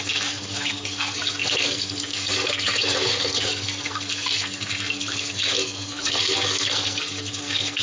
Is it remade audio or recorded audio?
remade